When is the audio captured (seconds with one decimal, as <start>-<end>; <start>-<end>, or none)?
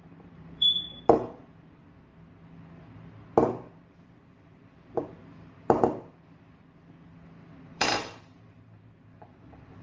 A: 1.8-3.5; 5.2-7.7